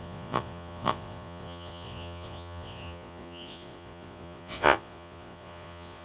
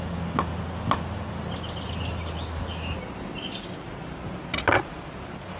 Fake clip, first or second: first